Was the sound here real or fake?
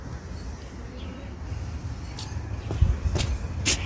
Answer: real